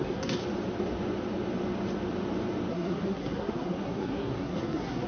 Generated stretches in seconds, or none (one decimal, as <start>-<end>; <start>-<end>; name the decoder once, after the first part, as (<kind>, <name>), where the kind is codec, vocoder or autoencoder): 0.0-0.4 (codec, SNAC); 2.7-5.1